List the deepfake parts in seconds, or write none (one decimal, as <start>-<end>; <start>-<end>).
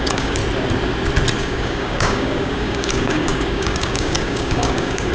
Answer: 0.0-0.4; 1.4-5.1